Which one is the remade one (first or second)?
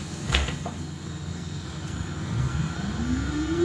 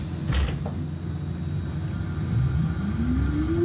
first